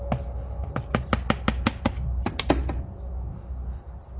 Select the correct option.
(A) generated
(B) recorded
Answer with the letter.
B